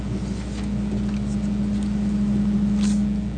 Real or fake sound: real